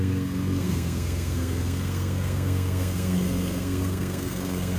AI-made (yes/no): yes